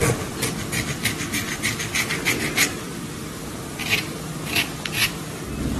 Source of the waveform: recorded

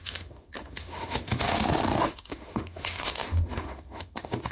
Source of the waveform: remade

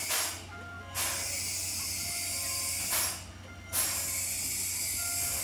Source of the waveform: recorded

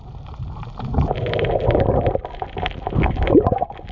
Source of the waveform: recorded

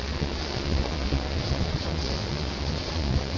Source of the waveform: remade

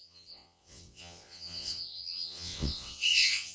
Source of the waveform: remade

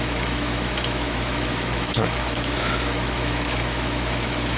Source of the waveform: remade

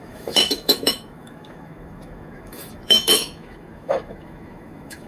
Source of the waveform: remade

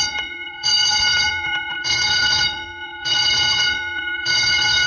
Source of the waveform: remade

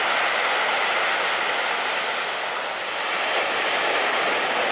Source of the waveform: recorded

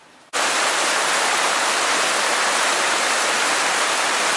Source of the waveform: recorded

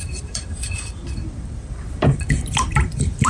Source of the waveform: remade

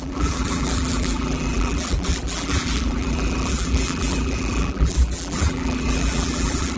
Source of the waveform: remade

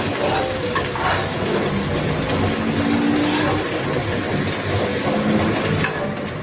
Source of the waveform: recorded